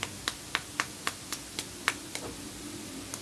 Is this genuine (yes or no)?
yes